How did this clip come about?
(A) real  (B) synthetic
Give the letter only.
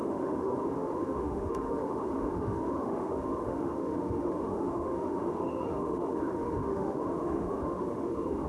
B